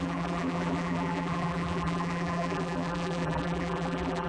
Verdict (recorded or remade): remade